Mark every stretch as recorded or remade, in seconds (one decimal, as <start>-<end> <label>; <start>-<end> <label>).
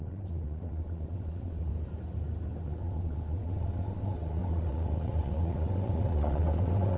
0.0-1.7 remade; 1.7-2.6 recorded; 2.6-7.0 remade